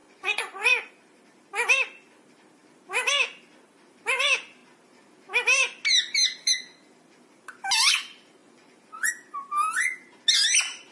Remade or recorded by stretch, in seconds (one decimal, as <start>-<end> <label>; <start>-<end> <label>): 0.0-0.9 remade; 0.9-8.4 recorded; 8.4-9.1 remade; 9.1-10.9 recorded